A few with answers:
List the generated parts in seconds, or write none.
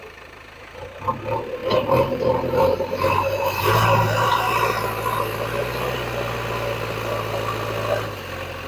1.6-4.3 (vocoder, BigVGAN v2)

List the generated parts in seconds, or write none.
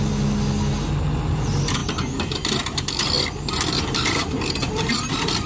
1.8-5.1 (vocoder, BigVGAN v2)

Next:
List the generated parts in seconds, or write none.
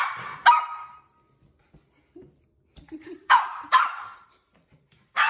0.0-0.4 (vocoder, BigVGAN v2); 3.2-5.3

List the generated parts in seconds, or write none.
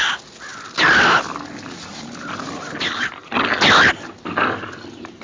1.9-2.5 (vocoder, BigVGAN v2)